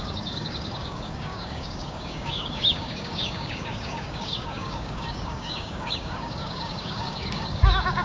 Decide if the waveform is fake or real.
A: fake